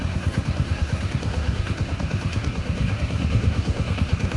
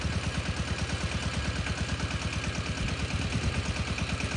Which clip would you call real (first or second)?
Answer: second